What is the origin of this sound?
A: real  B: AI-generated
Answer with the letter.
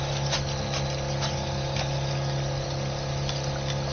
A